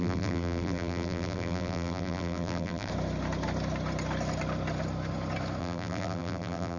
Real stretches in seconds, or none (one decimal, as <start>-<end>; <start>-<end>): 2.9-5.6